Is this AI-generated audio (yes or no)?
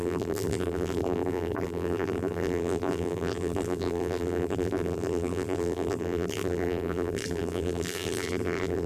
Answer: yes